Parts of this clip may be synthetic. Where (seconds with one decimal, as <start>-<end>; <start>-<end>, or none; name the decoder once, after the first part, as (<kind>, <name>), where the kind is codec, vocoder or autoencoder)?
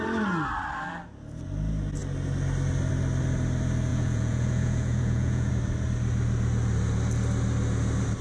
3.9-5.5 (vocoder, Vocos)